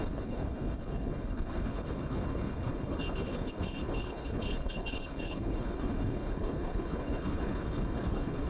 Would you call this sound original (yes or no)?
no